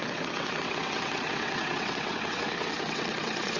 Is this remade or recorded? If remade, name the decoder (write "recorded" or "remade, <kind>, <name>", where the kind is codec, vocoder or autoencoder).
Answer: remade, vocoder, WaveNeXt